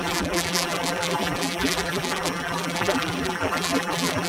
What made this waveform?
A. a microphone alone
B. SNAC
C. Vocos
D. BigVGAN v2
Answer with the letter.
D